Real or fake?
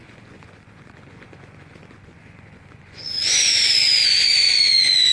fake